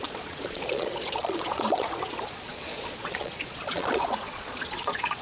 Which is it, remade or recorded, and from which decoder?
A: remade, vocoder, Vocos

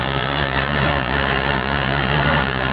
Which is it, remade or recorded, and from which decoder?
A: remade, vocoder, Vocos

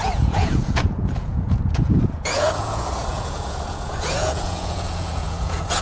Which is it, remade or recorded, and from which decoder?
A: remade, vocoder, Vocos